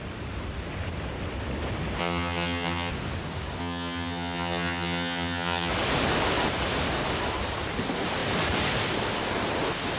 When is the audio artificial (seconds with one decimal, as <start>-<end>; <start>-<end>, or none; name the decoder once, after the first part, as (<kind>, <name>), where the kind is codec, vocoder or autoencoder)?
2.0-2.9 (vocoder, HiFi-GAN); 3.6-5.7